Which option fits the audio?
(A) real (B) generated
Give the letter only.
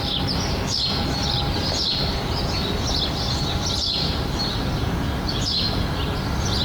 A